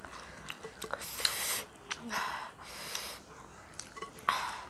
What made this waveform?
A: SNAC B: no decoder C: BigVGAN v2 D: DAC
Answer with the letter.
B